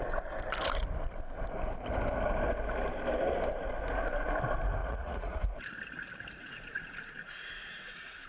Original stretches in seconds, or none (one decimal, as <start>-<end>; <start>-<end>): 0.0-4.8; 5.4-6.4